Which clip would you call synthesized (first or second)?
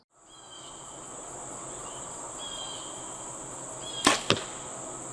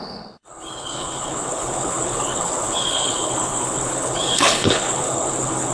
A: second